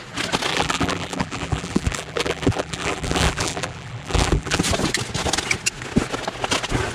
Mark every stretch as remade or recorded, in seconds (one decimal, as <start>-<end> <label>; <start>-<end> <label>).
0.0-0.5 recorded; 0.5-4.6 remade; 4.6-6.9 recorded